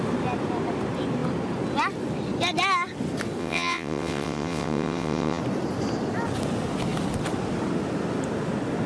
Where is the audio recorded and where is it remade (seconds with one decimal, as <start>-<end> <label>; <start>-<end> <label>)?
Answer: 0.0-3.4 recorded; 3.4-5.4 remade; 5.4-8.9 recorded